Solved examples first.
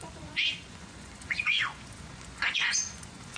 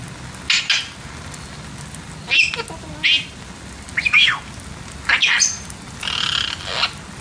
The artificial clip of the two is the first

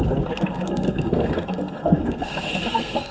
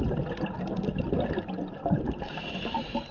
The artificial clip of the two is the first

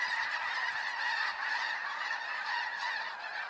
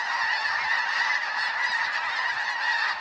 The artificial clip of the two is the first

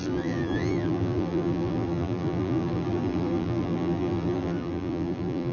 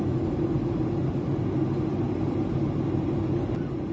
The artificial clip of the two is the first